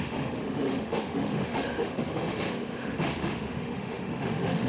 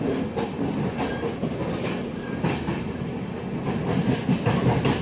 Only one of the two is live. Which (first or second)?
second